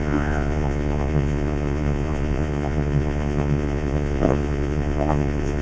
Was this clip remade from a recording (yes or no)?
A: yes